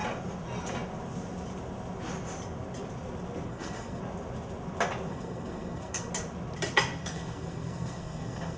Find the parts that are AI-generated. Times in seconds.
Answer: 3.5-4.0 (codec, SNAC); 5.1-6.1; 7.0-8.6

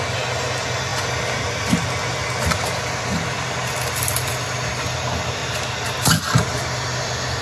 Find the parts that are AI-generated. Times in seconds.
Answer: none

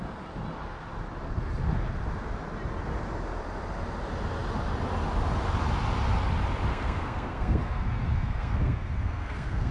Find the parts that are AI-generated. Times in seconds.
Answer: 6.7-9.7 (codec, SNAC)

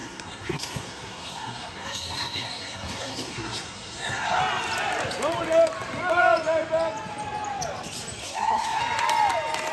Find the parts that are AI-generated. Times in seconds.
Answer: 0.0-4.4 (codec, SNAC); 8.2-8.8

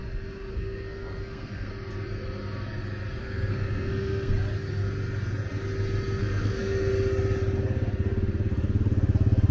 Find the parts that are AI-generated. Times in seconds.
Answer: 0.5-1.7 (codec, SNAC); 3.2-4.3; 6.2-6.9